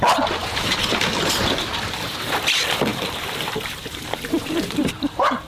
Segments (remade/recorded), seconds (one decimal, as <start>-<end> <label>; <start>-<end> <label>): 0.0-0.4 recorded; 0.4-2.2 remade; 2.2-2.9 recorded; 2.9-5.5 remade